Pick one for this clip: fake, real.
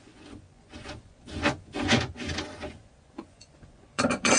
fake